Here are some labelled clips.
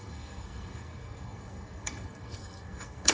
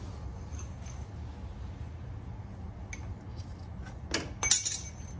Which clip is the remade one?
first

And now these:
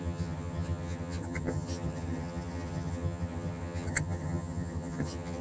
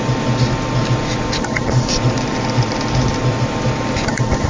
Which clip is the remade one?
first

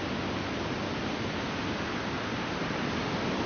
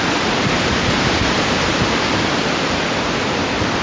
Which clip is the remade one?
second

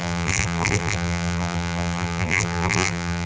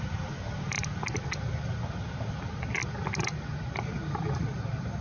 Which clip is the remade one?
first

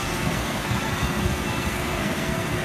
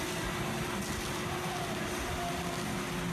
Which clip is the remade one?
first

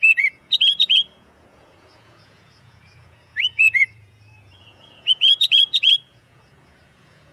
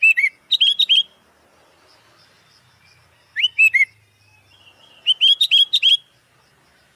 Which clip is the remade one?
first